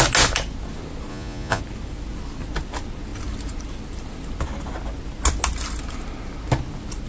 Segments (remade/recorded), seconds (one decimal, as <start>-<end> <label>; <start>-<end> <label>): 0.0-1.1 recorded; 1.1-1.6 remade; 1.6-7.1 recorded